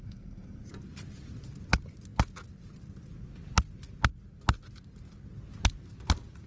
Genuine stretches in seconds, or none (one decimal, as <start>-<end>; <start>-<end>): 0.6-6.5